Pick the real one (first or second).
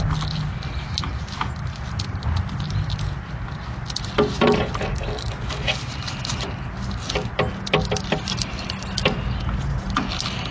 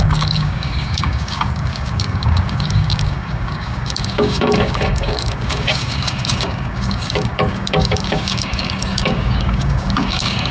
first